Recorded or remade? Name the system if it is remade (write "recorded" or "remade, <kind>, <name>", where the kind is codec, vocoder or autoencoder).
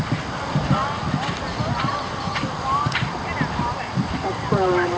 recorded